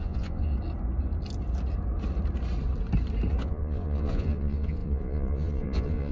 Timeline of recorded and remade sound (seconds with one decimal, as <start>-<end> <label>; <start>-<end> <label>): 0.0-0.5 remade; 0.5-3.3 recorded; 3.3-6.1 remade